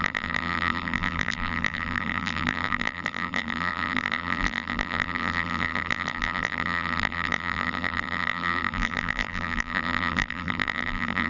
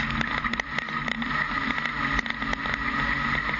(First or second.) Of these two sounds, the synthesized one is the first